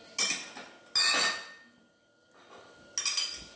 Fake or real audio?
real